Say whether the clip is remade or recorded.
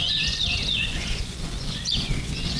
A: remade